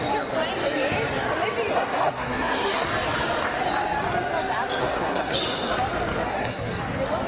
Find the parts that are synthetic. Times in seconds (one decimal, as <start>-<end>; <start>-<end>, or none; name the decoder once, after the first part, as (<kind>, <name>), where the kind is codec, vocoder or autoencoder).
1.7-2.9 (codec, SNAC); 4.8-5.4; 6.3-6.8